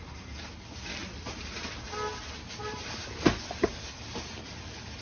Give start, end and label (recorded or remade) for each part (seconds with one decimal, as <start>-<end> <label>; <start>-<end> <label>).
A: 0.0-5.0 recorded

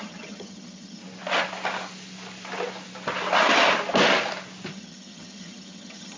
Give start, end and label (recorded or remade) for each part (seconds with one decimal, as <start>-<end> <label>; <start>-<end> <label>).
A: 0.0-1.0 remade; 1.0-4.7 recorded; 4.7-6.2 remade

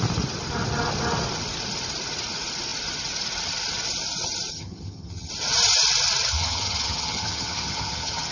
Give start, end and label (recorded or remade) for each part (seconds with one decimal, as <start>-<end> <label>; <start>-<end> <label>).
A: 0.0-4.5 recorded; 4.5-5.3 remade; 5.3-6.3 recorded; 6.3-8.3 remade

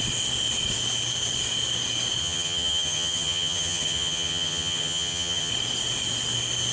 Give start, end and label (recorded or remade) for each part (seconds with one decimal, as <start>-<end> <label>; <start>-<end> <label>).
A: 0.0-2.2 recorded; 2.2-5.5 remade; 5.5-6.7 recorded

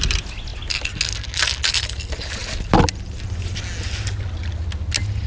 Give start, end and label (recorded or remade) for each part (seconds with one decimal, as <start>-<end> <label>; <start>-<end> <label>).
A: 0.0-5.3 recorded